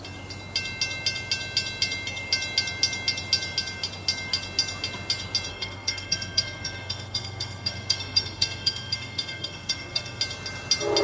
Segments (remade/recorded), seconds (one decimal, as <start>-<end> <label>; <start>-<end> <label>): 0.0-5.5 recorded; 5.5-10.2 remade; 10.2-11.0 recorded